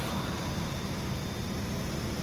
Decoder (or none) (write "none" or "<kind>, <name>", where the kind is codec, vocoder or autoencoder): none